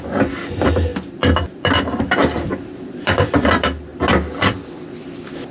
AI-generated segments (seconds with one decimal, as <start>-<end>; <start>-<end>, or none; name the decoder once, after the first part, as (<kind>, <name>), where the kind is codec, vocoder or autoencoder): 0.0-0.9 (vocoder, BigVGAN v2); 2.3-3.9; 4.4-5.5